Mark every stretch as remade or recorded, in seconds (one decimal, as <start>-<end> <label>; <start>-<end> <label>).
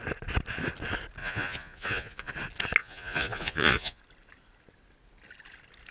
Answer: 0.0-1.2 recorded; 1.2-2.3 remade; 2.3-2.8 recorded; 2.8-4.0 remade; 4.0-5.9 recorded